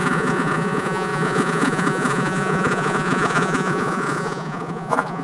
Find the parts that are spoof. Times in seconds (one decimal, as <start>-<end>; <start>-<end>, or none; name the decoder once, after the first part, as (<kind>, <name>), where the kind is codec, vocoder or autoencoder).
0.0-5.2 (vocoder, Vocos)

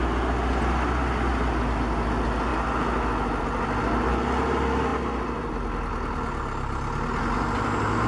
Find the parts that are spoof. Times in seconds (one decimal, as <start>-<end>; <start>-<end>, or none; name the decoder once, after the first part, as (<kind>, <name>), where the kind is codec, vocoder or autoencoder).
none

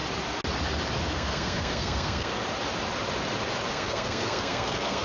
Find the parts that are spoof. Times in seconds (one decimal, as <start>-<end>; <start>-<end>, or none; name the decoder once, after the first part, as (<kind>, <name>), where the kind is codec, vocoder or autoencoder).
1.0-2.3 (codec, SNAC); 3.7-5.0

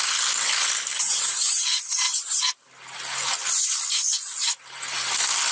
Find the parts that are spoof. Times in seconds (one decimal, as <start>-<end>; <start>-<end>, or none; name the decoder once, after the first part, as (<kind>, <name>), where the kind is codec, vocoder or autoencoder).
0.9-2.4 (vocoder, BigVGAN v2)

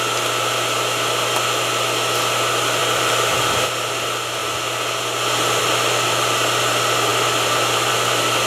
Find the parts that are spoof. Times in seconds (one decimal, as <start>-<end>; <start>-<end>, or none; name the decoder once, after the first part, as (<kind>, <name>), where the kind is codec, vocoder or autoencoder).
2.8-3.4 (vocoder, BigVGAN v2)

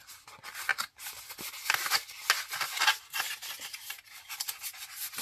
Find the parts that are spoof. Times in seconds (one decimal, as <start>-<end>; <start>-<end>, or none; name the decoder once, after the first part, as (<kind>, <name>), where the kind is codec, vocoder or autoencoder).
none

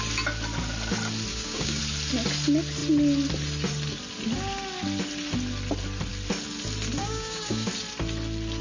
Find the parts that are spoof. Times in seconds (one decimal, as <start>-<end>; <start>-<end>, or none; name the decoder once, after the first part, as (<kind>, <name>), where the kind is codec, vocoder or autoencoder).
1.3-1.8 (codec, DAC); 7.0-7.7

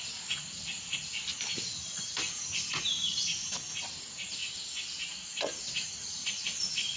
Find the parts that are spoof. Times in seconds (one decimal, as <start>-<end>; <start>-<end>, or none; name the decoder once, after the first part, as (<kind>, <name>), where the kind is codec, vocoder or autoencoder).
none